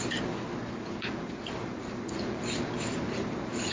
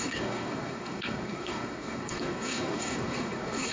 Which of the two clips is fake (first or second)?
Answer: second